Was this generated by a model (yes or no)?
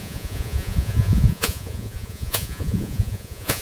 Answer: yes